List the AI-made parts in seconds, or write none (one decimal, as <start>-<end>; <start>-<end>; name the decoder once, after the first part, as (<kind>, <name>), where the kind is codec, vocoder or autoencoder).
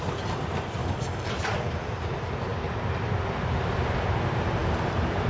0.8-1.3 (codec, DAC)